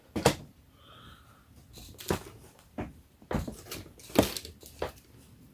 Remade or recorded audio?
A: recorded